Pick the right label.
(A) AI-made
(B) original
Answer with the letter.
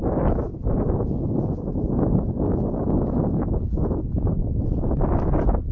B